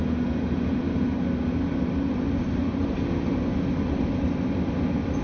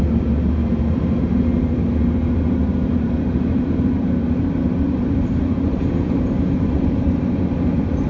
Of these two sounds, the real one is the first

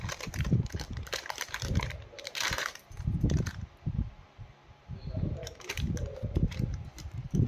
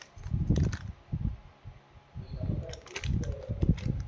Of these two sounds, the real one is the second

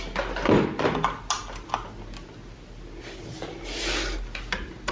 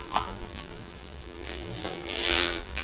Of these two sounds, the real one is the first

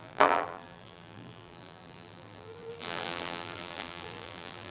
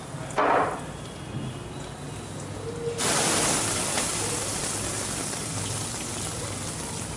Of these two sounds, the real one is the second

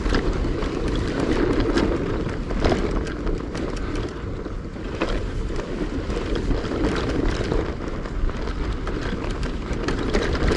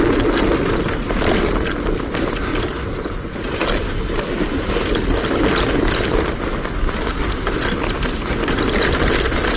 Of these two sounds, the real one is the second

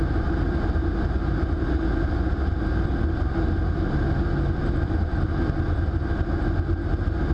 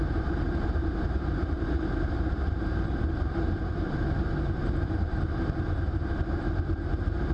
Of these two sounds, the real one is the first